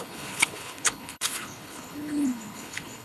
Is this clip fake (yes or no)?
yes